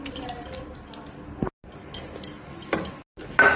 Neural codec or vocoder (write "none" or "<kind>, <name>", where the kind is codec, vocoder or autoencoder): none